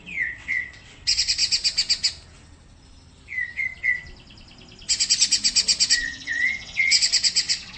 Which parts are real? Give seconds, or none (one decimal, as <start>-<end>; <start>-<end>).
1.4-5.9